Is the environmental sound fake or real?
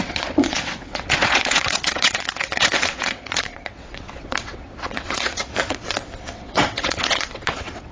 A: fake